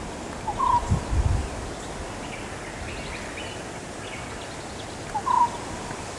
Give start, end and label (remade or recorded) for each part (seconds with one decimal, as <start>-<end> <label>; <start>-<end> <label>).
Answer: 0.0-6.2 recorded